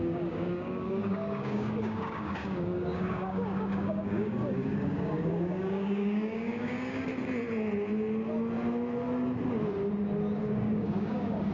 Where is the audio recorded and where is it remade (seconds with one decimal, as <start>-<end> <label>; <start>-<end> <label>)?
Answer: 0.0-7.1 remade; 7.1-10.4 recorded; 10.4-11.5 remade